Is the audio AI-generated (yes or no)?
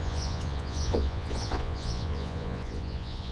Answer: yes